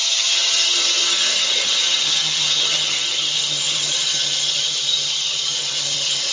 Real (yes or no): no